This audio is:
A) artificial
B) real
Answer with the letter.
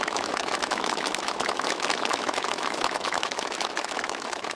A